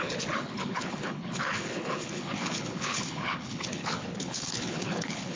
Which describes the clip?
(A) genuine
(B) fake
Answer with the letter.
B